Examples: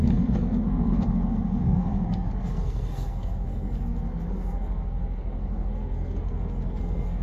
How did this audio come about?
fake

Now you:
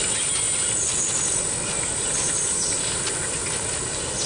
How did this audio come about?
real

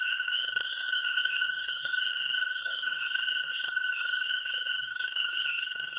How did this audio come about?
fake